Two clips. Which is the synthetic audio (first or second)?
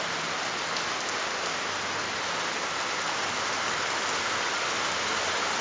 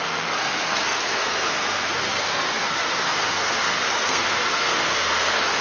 second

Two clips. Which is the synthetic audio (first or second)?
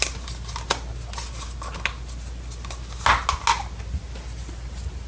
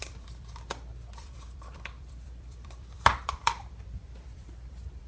second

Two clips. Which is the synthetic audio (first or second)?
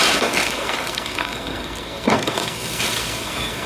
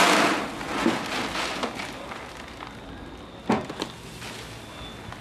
first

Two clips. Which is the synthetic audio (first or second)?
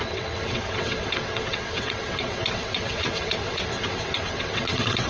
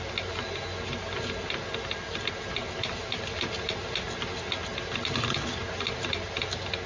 first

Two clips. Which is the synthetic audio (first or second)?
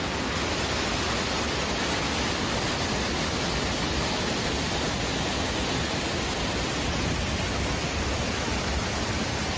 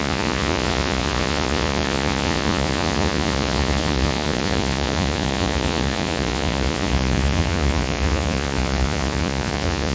second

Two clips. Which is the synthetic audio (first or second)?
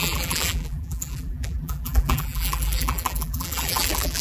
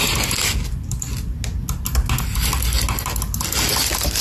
first